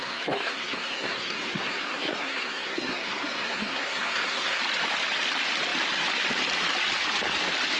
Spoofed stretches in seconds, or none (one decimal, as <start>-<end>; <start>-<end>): 0.0-4.6